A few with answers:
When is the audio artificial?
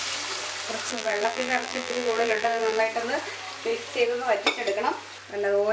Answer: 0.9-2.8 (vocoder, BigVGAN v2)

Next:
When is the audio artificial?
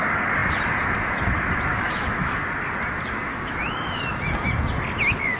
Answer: 1.7-2.4 (autoencoder, DAC-VAE); 3.3-4.0